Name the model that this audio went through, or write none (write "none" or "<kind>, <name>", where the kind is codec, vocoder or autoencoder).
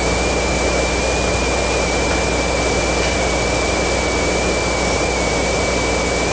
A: none